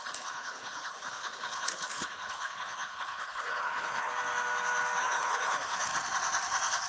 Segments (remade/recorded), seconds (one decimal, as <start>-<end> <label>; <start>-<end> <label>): 0.0-4.1 remade; 4.1-5.0 recorded; 5.0-5.9 remade; 5.9-6.9 recorded